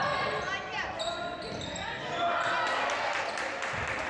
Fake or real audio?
real